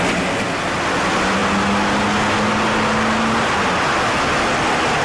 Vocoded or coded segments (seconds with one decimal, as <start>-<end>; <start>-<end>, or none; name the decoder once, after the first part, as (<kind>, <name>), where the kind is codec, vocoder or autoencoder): none